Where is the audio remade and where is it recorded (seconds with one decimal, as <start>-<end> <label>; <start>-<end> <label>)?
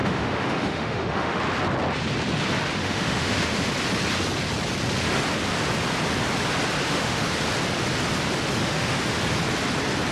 0.0-1.4 remade; 1.4-2.8 recorded; 2.8-3.7 remade; 3.7-6.8 recorded; 6.8-7.3 remade; 7.3-8.6 recorded; 8.6-9.2 remade; 9.2-10.1 recorded